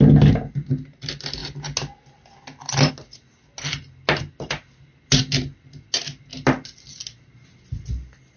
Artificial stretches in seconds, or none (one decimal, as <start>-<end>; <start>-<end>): none

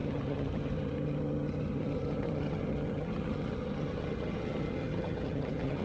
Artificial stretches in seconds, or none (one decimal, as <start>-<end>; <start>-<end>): 0.0-5.8